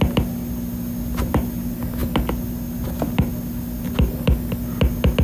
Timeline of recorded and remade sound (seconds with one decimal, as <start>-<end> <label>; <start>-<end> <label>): 0.0-5.2 recorded